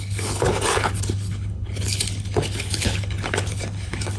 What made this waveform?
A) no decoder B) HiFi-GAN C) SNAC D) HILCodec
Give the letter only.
D